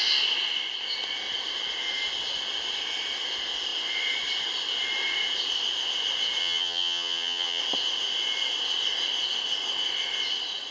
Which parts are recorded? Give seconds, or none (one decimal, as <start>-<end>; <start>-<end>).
0.0-6.4; 7.6-10.7